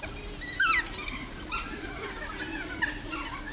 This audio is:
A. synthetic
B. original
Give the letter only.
B